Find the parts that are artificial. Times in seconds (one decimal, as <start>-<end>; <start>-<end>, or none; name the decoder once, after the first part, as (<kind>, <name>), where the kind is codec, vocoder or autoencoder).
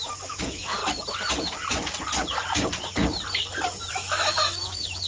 0.0-0.8 (autoencoder, DAC-VAE); 3.9-5.1